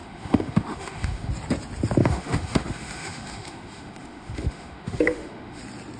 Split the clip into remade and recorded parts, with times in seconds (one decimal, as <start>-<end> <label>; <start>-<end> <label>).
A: 0.0-1.3 remade; 1.3-2.0 recorded; 2.0-5.6 remade; 5.6-6.0 recorded